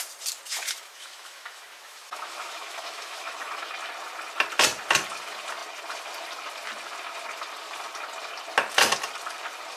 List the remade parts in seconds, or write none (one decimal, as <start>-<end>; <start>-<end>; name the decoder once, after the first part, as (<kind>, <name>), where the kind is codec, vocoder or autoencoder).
0.5-3.7 (autoencoder, DAC-VAE)